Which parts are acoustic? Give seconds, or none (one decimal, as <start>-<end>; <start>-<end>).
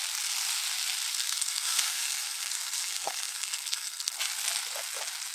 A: 0.0-1.1; 4.2-5.3